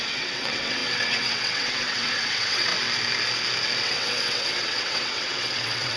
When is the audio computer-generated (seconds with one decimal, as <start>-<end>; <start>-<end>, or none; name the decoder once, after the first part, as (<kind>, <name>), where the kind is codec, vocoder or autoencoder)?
0.0-2.7 (vocoder, WaveNeXt); 3.8-6.0